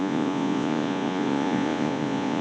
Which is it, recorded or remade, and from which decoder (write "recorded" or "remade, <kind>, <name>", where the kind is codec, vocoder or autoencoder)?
remade, vocoder, Vocos